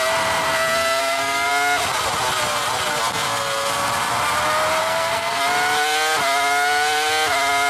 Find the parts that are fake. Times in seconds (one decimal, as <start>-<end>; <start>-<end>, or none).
1.0-1.5; 4.8-5.4